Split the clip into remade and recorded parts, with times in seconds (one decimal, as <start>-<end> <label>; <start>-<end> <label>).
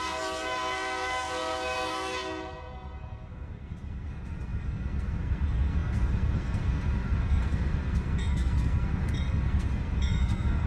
0.0-10.7 remade